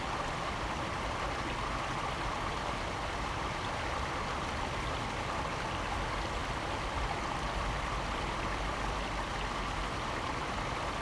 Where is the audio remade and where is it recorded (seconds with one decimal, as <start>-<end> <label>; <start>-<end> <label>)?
0.0-6.4 recorded; 6.4-9.0 remade; 9.0-11.0 recorded